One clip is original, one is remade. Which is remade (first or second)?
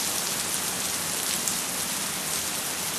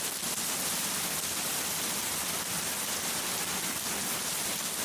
second